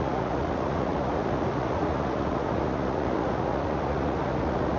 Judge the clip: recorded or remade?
remade